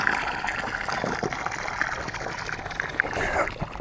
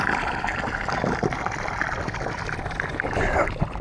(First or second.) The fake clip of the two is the second